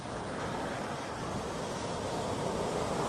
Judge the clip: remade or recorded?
recorded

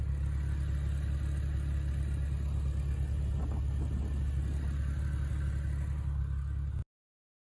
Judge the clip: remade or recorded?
recorded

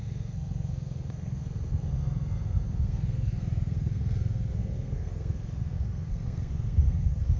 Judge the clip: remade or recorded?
remade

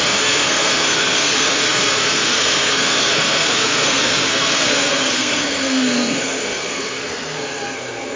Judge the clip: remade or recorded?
remade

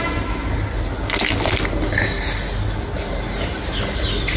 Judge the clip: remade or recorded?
recorded